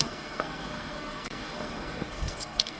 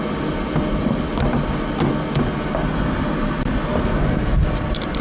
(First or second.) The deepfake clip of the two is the first